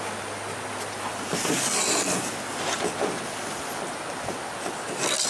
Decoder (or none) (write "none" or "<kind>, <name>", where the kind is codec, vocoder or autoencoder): none